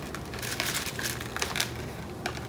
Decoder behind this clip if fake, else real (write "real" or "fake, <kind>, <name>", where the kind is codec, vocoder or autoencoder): real